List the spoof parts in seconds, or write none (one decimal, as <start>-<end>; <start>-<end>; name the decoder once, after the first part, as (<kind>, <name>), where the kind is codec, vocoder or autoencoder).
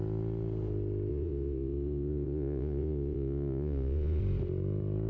1.1-4.2 (vocoder, Vocos)